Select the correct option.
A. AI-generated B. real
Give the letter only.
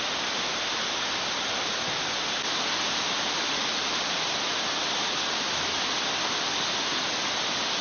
B